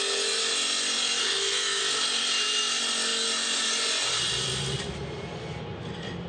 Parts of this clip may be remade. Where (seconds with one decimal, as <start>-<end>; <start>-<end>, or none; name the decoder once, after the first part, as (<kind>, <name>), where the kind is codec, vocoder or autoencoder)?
1.2-1.8 (codec, SNAC)